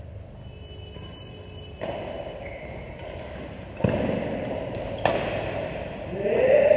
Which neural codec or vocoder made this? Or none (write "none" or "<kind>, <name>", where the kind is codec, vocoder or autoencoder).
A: none